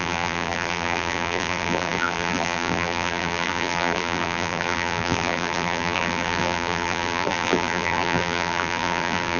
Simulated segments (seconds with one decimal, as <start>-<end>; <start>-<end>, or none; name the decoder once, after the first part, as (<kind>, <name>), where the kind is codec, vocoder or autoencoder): 0.0-9.4 (vocoder, BigVGAN v2)